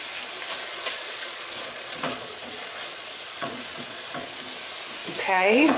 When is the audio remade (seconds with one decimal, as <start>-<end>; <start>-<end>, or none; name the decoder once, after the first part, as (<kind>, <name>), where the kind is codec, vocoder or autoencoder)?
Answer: 0.7-4.2 (vocoder, Vocos); 5.0-5.8